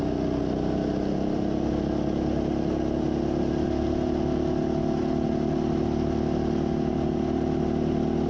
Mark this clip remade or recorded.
recorded